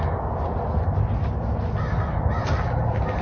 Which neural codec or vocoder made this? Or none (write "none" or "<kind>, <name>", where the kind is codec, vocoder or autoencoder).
none